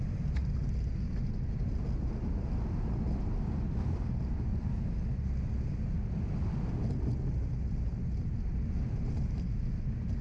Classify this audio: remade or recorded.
recorded